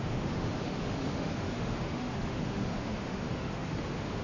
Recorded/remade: remade